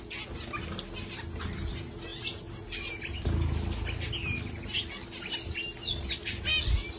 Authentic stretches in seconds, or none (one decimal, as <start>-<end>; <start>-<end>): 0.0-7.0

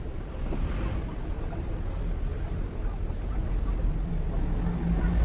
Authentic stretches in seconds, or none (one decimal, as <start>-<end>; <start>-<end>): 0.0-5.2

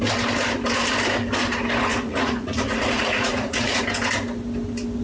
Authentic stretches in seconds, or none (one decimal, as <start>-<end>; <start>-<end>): 0.0-1.9; 3.8-5.0